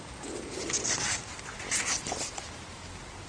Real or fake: real